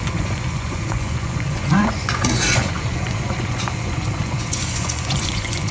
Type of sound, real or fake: fake